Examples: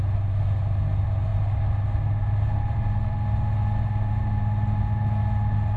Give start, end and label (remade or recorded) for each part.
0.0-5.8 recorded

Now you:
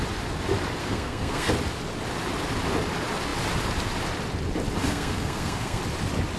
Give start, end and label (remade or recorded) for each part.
0.0-0.8 recorded; 0.8-1.5 remade; 1.5-4.9 recorded; 4.9-5.8 remade; 5.8-6.4 recorded

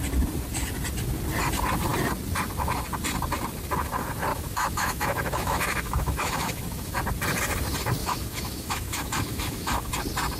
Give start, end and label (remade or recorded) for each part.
0.0-4.3 recorded; 4.3-7.0 remade; 7.0-8.0 recorded; 8.0-9.9 remade; 9.9-10.4 recorded

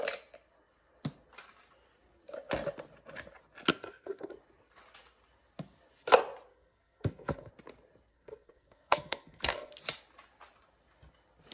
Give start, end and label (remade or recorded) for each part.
0.0-3.7 recorded; 3.7-4.3 remade; 4.3-6.5 recorded; 6.5-7.5 remade; 7.5-8.1 recorded; 8.1-9.7 remade; 9.7-11.5 recorded